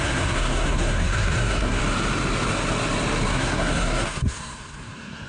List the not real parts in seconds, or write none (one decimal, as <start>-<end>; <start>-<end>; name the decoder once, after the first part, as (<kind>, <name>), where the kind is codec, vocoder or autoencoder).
0.0-1.8 (codec, SNAC); 3.3-5.3